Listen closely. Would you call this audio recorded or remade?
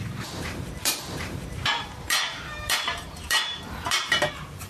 remade